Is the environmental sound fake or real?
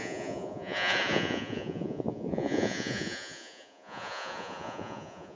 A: fake